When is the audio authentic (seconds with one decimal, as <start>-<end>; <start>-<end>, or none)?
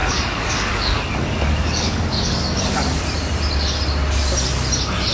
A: 3.0-5.1